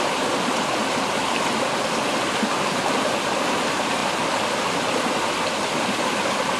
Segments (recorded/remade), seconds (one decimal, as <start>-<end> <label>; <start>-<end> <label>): 0.0-6.6 recorded

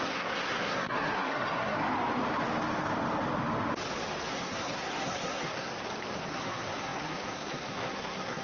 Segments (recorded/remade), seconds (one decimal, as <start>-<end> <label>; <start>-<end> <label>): 0.0-1.8 remade; 1.8-4.3 recorded; 4.3-5.7 remade; 5.7-6.3 recorded; 6.3-8.4 remade